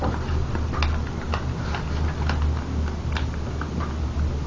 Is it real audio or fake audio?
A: real